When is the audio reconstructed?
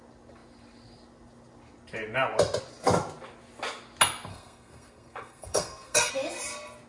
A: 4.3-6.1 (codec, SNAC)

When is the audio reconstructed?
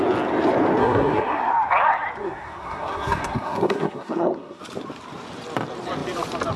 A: 0.8-1.5 (codec, SNAC); 2.2-4.6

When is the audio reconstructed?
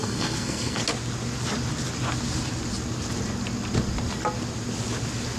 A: 0.0-0.8 (codec, SNAC)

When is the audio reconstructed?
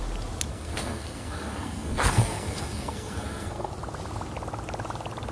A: 0.5-3.7 (codec, SNAC)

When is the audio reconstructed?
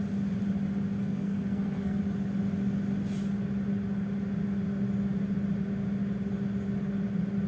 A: 1.0-2.0 (codec, SNAC)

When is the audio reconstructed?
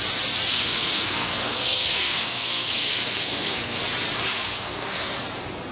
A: 0.5-3.8 (codec, SNAC); 4.3-5.1